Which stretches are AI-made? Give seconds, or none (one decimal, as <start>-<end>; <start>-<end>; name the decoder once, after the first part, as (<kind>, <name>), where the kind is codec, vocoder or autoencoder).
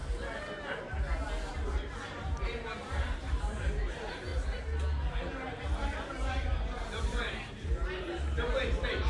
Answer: 1.5-4.3 (vocoder, BigVGAN v2); 6.0-9.1